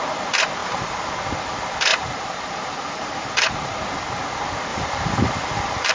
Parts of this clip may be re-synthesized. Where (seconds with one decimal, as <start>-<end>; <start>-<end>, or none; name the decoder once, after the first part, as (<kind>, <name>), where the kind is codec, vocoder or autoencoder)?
0.6-1.1 (vocoder, BigVGAN v2); 1.9-3.8; 4.7-5.9